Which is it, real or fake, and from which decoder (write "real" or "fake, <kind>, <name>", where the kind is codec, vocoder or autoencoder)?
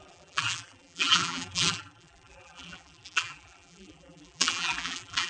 fake, vocoder, BigVGAN v2